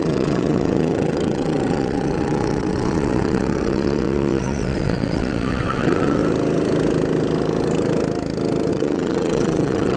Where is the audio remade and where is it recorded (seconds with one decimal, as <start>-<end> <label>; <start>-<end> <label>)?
0.0-6.2 remade; 6.2-8.7 recorded; 8.7-10.0 remade